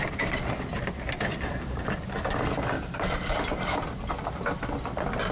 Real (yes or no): yes